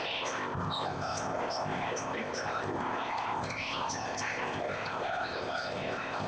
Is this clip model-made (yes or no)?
yes